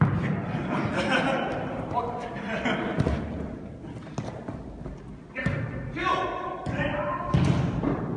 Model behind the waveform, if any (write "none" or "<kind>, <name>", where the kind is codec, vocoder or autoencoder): none